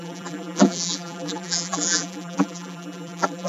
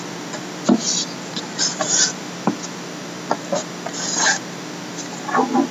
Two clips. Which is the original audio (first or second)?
second